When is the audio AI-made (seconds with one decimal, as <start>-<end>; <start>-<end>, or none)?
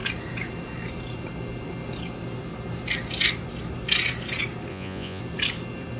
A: 4.7-5.2